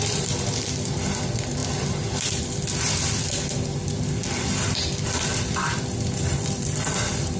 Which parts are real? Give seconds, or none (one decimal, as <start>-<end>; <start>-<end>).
none